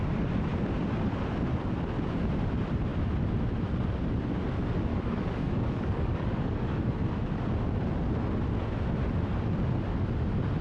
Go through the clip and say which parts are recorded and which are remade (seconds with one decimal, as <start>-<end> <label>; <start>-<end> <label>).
0.0-4.9 recorded; 4.9-6.9 remade; 6.9-10.6 recorded